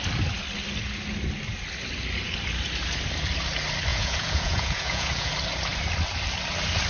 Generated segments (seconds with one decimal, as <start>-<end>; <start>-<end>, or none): 3.9-5.3